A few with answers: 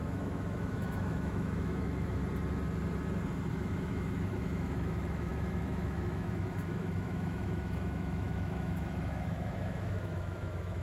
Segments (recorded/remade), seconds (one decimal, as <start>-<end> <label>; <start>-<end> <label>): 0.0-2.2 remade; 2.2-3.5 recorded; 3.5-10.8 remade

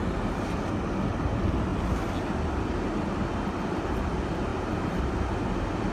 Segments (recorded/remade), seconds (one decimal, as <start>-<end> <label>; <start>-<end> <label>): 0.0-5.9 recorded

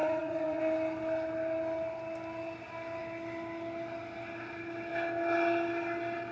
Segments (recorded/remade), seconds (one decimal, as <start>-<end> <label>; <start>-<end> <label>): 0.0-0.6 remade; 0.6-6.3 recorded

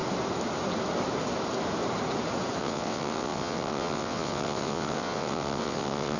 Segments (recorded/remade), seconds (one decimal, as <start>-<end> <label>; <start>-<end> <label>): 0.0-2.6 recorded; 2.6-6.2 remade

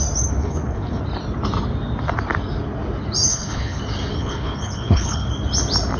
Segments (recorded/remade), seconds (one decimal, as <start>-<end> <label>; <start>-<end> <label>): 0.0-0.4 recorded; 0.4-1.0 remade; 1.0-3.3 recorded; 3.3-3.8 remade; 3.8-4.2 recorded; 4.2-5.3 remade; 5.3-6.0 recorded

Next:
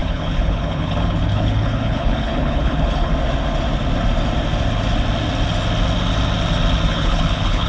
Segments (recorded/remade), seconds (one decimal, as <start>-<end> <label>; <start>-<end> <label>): 0.0-3.1 remade; 3.1-6.9 recorded; 6.9-7.7 remade

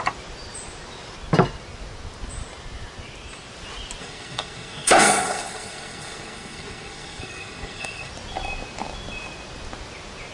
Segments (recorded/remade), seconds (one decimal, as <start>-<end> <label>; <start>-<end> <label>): 0.0-4.0 recorded; 4.0-8.1 remade; 8.1-10.3 recorded

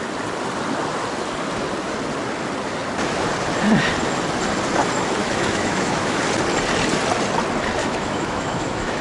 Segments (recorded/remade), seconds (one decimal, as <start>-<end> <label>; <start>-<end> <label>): 0.0-5.2 recorded; 5.2-6.2 remade; 6.2-7.8 recorded; 7.8-9.0 remade